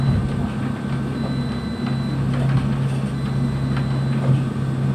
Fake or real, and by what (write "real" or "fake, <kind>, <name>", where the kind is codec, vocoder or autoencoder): real